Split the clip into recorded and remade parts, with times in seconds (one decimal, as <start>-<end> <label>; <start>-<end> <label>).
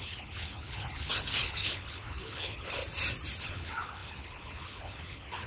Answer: 0.0-2.8 remade; 2.8-3.4 recorded; 3.4-5.5 remade